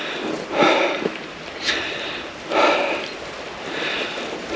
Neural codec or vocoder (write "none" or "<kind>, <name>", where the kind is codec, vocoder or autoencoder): vocoder, BigVGAN v2